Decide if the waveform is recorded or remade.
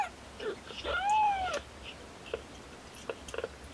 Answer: recorded